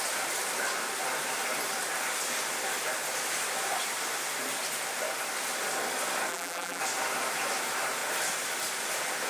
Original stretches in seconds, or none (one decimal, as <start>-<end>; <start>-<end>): 0.0-6.3; 6.8-9.3